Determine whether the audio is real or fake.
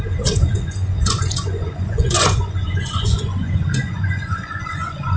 fake